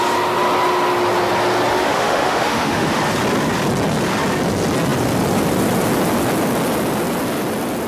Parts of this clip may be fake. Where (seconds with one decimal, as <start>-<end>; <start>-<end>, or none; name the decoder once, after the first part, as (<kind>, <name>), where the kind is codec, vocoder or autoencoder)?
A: 1.7-3.0 (autoencoder, DAC-VAE)